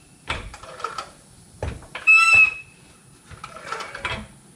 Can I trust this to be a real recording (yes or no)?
no